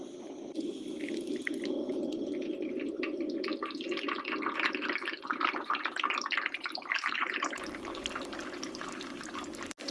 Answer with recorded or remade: recorded